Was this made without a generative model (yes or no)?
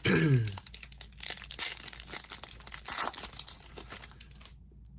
yes